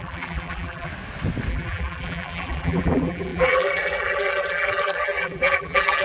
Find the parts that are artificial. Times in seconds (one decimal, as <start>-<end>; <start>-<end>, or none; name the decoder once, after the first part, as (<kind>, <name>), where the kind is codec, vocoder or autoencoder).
0.0-0.9 (vocoder, BigVGAN v2); 1.5-6.0